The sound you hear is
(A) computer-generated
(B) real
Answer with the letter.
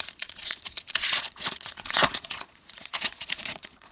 A